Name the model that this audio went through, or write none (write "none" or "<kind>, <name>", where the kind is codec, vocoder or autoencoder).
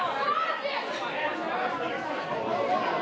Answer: none